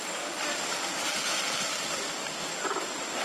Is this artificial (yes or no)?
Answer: no